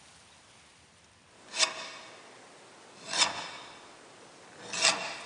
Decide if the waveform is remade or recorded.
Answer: recorded